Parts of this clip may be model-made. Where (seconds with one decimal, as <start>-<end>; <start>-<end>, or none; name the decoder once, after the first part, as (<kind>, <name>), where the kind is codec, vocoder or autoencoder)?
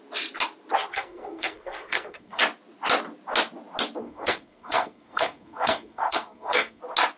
0.9-2.4 (codec, SNAC); 4.0-6.8